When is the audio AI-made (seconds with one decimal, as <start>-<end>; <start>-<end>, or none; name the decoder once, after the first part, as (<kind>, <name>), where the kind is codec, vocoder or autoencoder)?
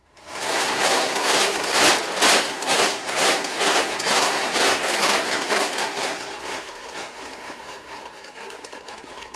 0.0-1.8 (codec, SNAC); 2.4-9.4